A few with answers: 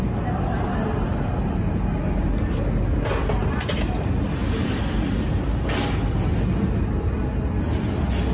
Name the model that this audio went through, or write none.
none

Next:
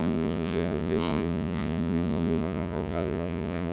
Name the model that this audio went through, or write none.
vocoder, Vocos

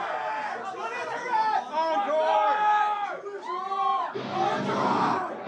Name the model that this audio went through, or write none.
none